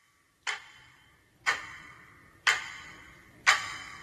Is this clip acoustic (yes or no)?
no